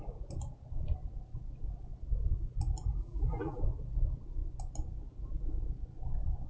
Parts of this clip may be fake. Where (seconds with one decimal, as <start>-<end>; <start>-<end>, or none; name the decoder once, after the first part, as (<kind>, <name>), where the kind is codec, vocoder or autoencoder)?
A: 3.0-3.6 (vocoder, BigVGAN v2)